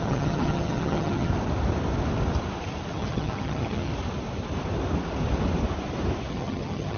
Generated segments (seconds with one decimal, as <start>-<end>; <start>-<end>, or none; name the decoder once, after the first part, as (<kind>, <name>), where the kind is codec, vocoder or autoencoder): 0.0-1.3 (vocoder, HiFi-GAN); 2.9-3.9; 6.3-7.0